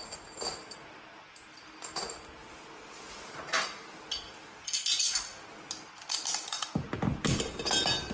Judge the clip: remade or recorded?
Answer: recorded